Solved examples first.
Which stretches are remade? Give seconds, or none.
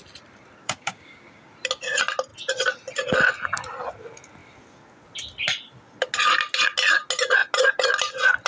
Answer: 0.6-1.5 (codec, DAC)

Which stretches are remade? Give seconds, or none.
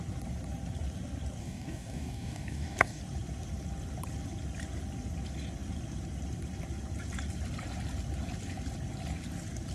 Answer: 1.4-3.0 (codec, DAC)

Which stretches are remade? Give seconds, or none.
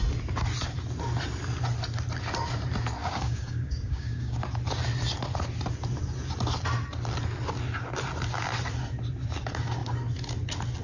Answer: 3.0-4.4 (codec, DAC)